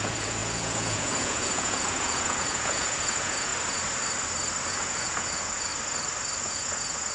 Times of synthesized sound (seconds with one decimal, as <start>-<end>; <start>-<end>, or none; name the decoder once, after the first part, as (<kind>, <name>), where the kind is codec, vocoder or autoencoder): 0.0-3.5 (vocoder, Vocos); 4.7-5.7; 6.4-7.1